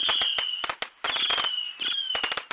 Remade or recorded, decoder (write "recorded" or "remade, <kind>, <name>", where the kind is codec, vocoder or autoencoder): recorded